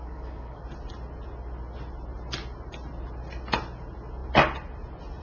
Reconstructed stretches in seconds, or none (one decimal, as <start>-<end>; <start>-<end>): 0.0-0.6